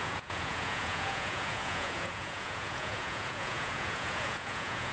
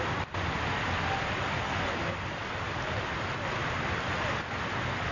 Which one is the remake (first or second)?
first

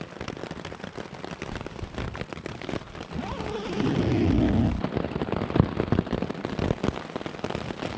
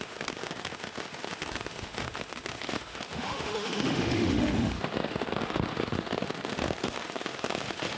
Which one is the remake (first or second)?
second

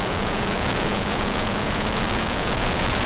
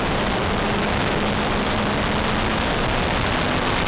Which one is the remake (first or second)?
first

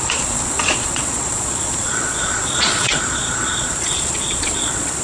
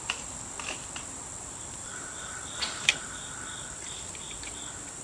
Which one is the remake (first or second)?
first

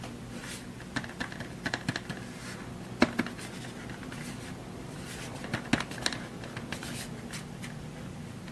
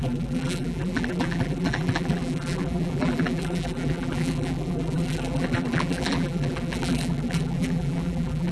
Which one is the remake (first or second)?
second